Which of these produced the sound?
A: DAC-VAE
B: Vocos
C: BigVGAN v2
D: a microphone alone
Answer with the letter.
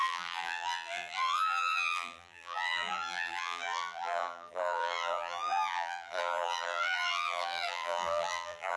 C